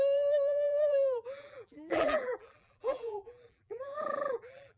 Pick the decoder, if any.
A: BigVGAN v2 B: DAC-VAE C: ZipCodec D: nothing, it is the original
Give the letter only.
A